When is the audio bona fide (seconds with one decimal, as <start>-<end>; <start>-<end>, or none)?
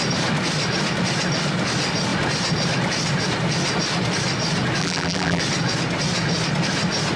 0.0-4.8; 5.4-7.2